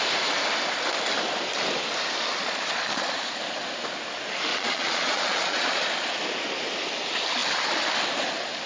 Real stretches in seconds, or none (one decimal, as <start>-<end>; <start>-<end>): 0.0-2.4; 3.3-4.5; 6.2-8.7